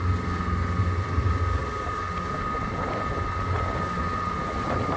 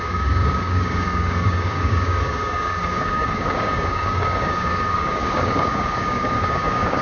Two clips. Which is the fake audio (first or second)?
second